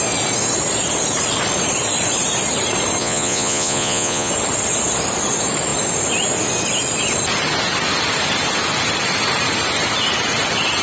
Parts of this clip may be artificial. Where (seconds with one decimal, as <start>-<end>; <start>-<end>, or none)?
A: 3.0-4.3